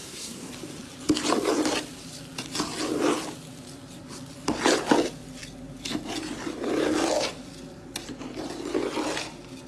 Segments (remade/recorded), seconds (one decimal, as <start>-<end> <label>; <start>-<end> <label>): 0.0-0.5 remade; 0.5-9.7 recorded